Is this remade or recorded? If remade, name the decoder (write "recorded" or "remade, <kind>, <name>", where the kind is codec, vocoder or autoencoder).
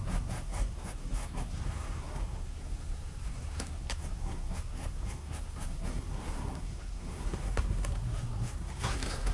remade, codec, SNAC